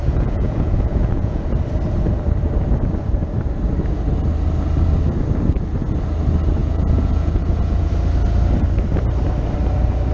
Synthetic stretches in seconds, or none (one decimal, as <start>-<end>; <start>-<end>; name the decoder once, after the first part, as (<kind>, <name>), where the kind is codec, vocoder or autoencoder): 0.0-1.4 (vocoder, Vocos); 6.6-7.9